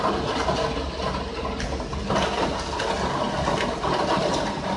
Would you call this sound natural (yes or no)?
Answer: yes